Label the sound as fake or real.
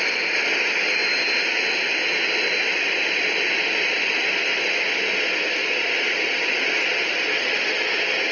real